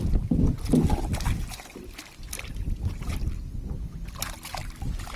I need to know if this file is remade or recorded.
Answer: recorded